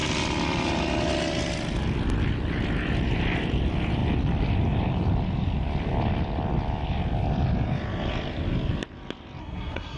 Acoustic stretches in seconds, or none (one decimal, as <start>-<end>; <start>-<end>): 0.0-9.4